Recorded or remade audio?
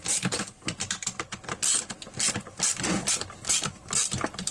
remade